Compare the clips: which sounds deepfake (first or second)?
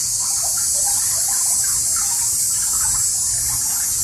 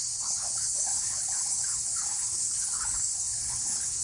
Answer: second